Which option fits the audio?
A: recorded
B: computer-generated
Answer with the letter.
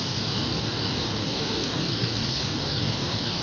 B